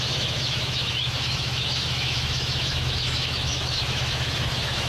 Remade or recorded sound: remade